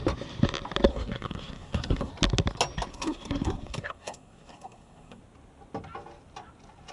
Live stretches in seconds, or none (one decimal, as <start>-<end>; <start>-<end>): 0.0-0.9; 2.1-2.9; 5.2-6.9